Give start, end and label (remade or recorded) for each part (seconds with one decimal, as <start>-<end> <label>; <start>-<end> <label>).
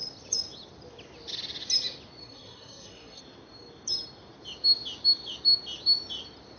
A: 0.0-2.2 recorded; 2.2-3.2 remade; 3.2-6.6 recorded